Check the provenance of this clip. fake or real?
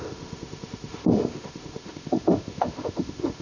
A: fake